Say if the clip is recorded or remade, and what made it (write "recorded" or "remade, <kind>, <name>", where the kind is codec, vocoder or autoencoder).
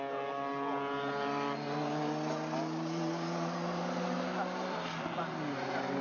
recorded